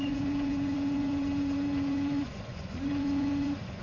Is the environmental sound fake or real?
fake